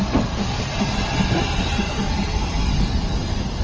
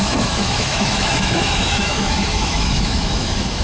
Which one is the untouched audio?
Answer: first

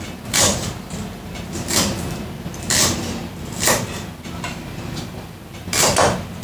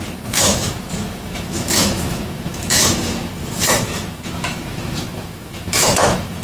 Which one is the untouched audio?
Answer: first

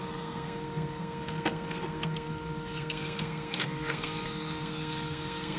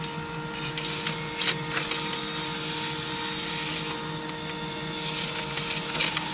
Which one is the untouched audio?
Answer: second